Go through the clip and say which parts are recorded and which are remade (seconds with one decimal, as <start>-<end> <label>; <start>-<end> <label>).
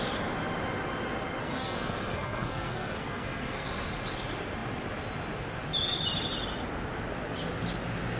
0.0-1.4 recorded; 1.4-3.7 remade; 3.7-8.2 recorded